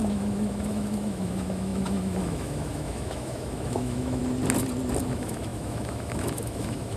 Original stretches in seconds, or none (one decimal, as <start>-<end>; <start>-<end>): 4.2-5.0